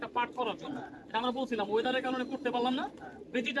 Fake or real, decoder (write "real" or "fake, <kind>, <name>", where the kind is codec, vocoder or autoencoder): fake, vocoder, Vocos